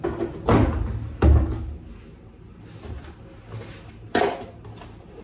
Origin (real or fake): real